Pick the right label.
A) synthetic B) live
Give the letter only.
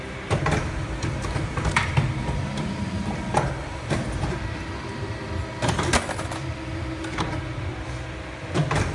A